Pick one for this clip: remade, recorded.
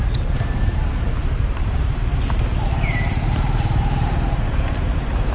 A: remade